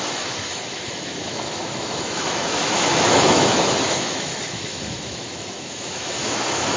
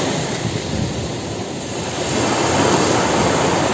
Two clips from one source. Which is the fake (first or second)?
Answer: first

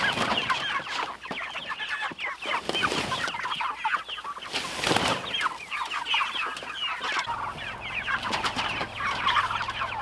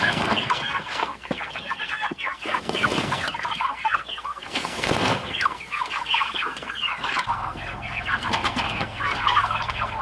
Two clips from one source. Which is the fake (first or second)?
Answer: second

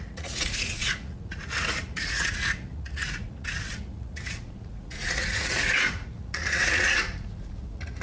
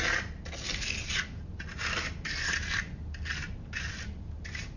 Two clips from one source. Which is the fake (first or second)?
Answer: first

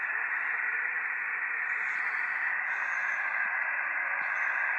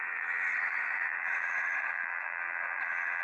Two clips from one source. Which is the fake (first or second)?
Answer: second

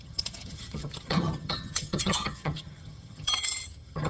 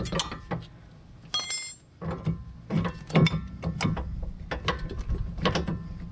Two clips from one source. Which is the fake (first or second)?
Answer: first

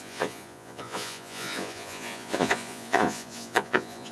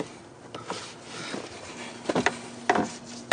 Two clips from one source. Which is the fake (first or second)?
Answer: first